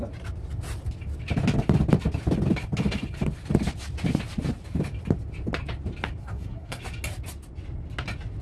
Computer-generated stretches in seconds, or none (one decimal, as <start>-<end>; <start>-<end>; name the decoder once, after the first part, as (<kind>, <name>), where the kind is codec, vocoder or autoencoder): 6.2-6.8 (codec, SNAC)